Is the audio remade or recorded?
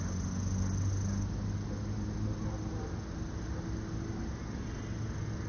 recorded